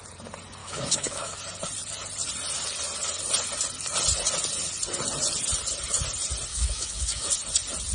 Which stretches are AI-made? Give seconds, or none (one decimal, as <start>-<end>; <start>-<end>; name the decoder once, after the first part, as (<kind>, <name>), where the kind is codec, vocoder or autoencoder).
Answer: 0.6-1.4 (autoencoder, DAC-VAE); 6.5-7.3